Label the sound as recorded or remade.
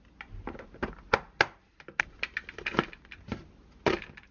recorded